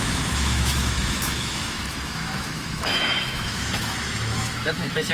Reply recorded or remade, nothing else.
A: remade